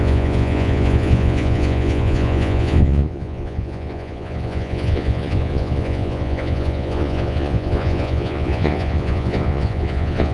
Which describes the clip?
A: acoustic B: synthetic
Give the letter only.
B